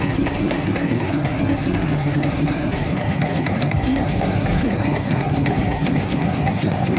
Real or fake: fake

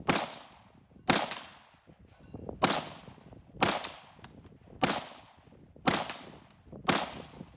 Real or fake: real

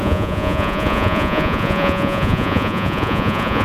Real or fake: fake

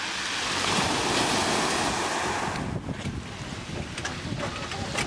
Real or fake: real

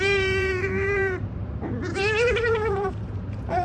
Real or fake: fake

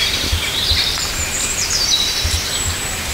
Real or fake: fake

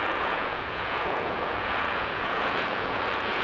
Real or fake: fake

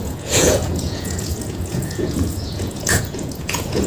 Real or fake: fake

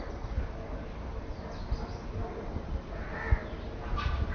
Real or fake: real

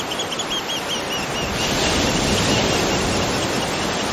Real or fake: real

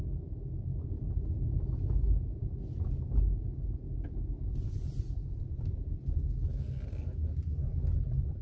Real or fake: real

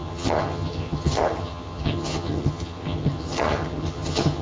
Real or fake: fake